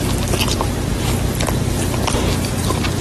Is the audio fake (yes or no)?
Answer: no